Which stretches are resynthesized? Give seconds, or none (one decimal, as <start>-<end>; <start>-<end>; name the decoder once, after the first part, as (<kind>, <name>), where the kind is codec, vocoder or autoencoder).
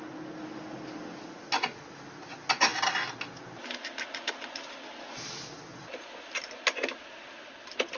none